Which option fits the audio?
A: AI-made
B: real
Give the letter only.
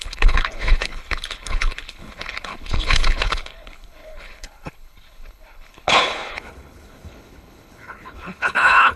A